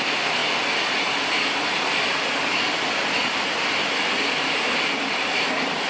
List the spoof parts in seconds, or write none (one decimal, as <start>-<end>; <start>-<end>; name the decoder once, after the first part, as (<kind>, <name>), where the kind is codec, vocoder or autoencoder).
none